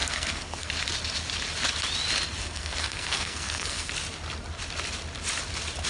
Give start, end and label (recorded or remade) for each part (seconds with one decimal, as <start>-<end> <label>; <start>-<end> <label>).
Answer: 0.0-0.7 remade; 0.7-2.4 recorded; 2.4-3.9 remade; 3.9-5.9 recorded